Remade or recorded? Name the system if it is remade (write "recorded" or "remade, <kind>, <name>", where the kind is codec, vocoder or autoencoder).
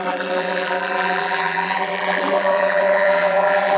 remade, vocoder, BigVGAN v2